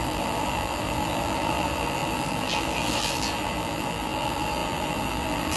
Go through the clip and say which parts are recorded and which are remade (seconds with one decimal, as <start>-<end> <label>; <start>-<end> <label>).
0.0-5.6 remade